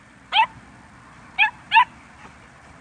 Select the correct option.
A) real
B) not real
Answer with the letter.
B